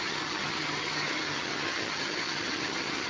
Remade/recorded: remade